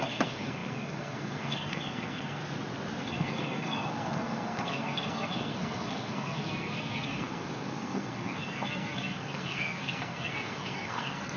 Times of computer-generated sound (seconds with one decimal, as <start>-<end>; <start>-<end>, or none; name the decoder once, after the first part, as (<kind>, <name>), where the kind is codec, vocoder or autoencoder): 0.0-2.4 (codec, SNAC); 3.0-11.4